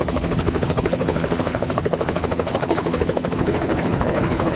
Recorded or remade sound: remade